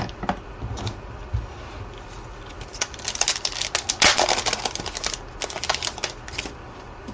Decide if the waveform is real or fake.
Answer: real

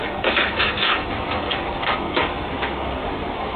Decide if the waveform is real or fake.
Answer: fake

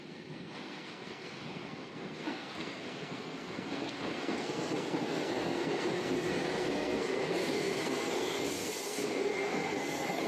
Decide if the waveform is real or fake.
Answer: fake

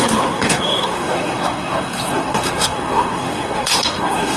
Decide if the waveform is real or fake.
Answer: fake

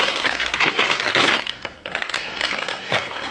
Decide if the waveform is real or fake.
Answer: fake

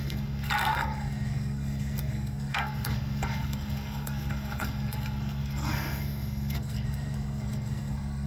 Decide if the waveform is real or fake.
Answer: fake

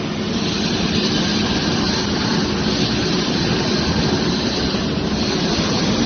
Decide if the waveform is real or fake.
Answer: real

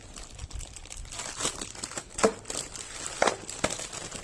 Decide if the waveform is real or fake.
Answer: real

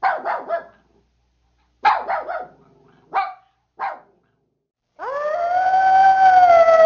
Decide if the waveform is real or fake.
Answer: real